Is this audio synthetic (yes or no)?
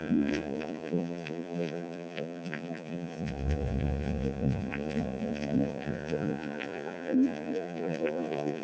yes